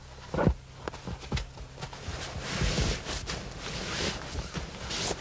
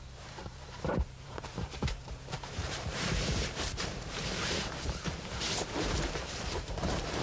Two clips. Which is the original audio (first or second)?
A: first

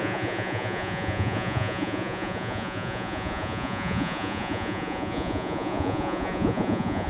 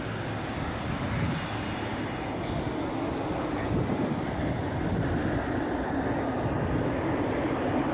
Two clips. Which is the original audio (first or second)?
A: second